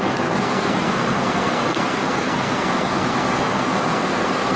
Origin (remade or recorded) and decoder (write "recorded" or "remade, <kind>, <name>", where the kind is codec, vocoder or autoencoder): remade, codec, SNAC